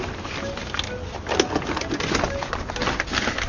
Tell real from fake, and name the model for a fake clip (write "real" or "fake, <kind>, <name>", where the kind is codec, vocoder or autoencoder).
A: real